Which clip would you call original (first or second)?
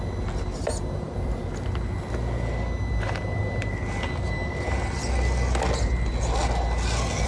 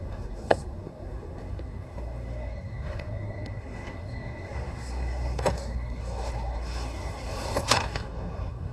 first